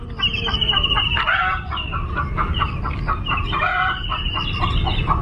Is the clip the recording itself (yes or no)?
yes